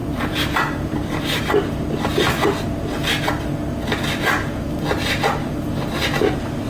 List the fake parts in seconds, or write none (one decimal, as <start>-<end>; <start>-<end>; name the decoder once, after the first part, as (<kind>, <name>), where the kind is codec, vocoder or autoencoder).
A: 0.0-3.0 (vocoder, BigVGAN v2)